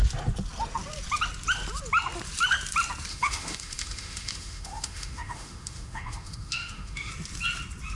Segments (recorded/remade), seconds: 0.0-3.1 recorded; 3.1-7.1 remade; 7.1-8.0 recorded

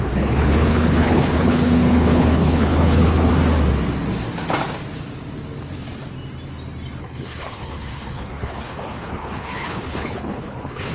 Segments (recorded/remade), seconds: 0.0-3.3 remade; 3.3-7.0 recorded; 7.0-10.9 remade

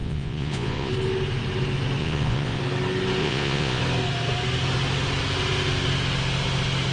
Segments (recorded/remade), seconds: 0.0-0.9 remade; 0.9-2.0 recorded; 2.0-2.6 remade; 2.6-3.2 recorded; 3.2-3.8 remade; 3.8-6.9 recorded

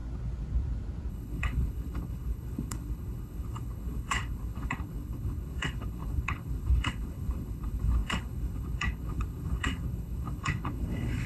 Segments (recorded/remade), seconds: 0.0-1.1 recorded; 1.1-11.3 remade

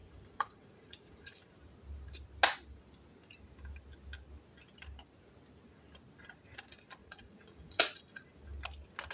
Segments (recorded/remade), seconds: 0.0-1.5 remade; 1.5-7.0 recorded; 7.0-8.0 remade; 8.0-9.1 recorded

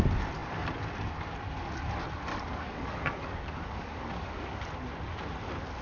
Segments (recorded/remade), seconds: 0.0-2.3 recorded; 2.3-4.6 remade; 4.6-5.8 recorded